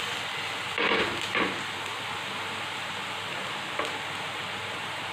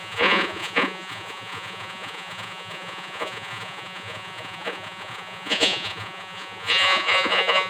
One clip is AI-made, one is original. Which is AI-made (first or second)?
second